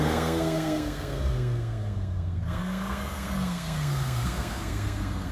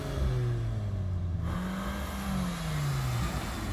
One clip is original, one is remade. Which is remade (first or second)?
first